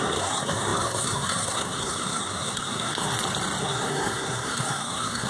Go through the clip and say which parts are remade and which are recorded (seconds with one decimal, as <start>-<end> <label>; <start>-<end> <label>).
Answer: 0.0-3.1 remade; 3.1-3.6 recorded; 3.6-5.3 remade